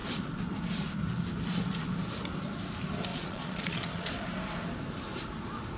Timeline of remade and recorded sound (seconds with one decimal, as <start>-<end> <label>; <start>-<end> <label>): 0.0-3.1 recorded; 3.1-4.1 remade; 4.1-5.8 recorded